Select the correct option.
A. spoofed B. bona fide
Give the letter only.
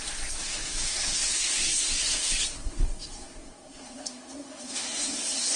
A